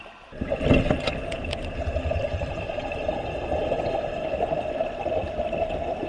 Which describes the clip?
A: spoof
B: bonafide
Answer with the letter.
B